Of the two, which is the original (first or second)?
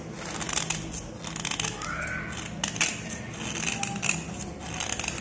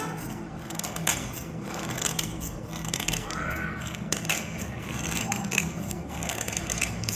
first